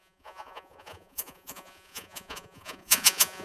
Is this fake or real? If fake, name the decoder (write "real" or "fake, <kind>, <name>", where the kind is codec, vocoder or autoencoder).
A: fake, vocoder, Vocos